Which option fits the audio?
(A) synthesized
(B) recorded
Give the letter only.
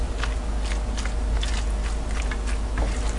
B